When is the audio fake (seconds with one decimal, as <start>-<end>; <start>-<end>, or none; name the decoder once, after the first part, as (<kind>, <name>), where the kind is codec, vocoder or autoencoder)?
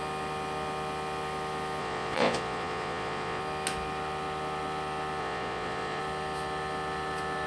1.8-3.4 (vocoder, Vocos); 5.2-6.0